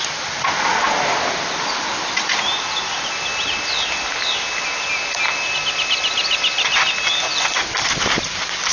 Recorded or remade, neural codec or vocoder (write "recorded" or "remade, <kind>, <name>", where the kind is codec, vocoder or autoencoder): recorded